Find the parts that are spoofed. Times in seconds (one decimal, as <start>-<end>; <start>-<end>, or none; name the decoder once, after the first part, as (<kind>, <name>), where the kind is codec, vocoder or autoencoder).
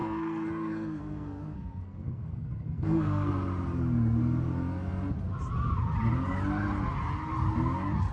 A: 0.0-3.3 (codec, SNAC)